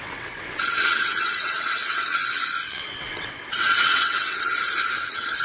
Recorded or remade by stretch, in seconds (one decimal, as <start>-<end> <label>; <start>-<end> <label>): 0.0-2.2 remade; 2.2-2.7 recorded; 2.7-4.5 remade; 4.5-5.0 recorded; 5.0-5.4 remade